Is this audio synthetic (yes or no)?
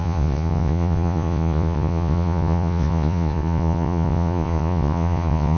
yes